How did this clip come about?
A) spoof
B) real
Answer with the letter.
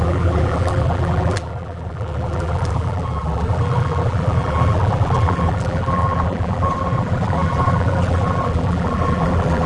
A